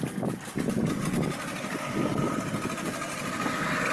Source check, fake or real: real